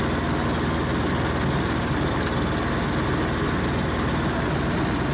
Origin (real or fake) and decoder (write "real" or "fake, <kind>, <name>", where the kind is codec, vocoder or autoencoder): real